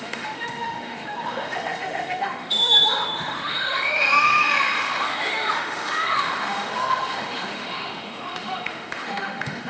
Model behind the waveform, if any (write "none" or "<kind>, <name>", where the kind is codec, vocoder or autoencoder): autoencoder, DAC-VAE